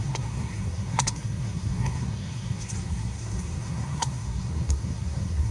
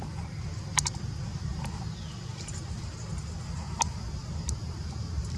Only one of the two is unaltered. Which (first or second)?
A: second